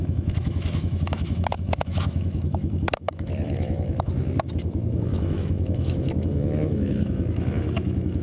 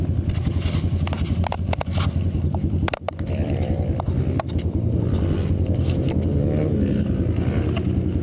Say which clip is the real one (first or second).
second